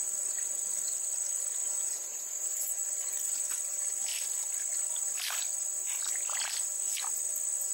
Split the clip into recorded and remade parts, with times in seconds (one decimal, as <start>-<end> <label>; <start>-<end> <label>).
0.0-1.6 recorded; 1.6-2.9 remade; 2.9-7.7 recorded